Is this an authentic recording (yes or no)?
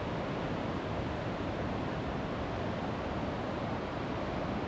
yes